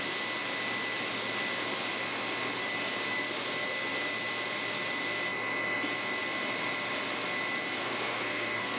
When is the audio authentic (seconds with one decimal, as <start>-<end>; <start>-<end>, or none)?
0.0-7.8